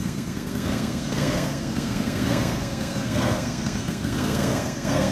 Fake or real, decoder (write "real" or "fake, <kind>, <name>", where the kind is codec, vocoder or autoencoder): fake, codec, SNAC